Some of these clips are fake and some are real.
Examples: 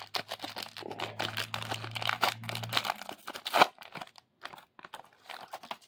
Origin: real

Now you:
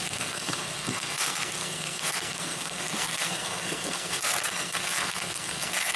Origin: fake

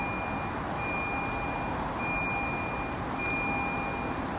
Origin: real